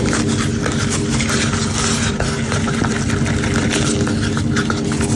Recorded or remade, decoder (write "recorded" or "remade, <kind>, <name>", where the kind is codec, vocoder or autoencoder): recorded